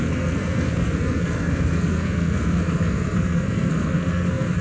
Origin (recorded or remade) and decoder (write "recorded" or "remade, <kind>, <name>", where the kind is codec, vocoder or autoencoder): remade, codec, SNAC